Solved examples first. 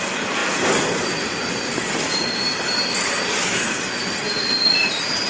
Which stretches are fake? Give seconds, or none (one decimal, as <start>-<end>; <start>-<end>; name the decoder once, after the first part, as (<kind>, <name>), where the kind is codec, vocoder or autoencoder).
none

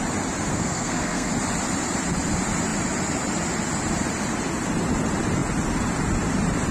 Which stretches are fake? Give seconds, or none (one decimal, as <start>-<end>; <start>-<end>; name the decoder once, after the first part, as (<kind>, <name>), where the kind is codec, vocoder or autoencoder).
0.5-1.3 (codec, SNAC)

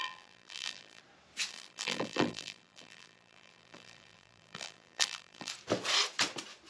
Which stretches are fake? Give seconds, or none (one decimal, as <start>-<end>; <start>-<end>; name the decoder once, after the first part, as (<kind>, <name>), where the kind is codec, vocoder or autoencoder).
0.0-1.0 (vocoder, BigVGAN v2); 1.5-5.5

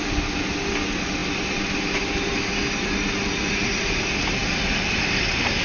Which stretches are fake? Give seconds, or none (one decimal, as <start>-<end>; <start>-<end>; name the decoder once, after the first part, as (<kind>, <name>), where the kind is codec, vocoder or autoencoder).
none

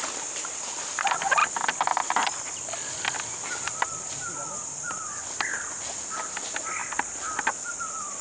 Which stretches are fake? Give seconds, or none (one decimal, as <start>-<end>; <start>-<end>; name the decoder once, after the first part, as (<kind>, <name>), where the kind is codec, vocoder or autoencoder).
none

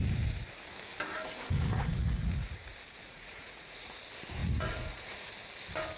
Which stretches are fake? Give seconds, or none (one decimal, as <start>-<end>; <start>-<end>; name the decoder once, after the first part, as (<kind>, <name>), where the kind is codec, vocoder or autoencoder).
1.7-2.7 (vocoder, Vocos); 3.1-4.0; 4.4-5.3

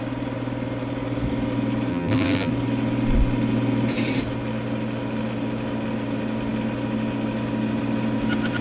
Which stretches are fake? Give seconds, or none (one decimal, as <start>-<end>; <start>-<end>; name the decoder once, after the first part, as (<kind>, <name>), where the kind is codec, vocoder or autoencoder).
1.9-2.5 (vocoder, BigVGAN v2)

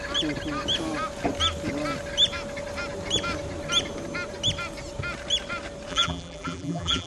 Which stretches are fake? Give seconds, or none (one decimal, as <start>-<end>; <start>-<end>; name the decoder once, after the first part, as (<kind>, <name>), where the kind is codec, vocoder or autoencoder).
5.9-7.1 (vocoder, BigVGAN v2)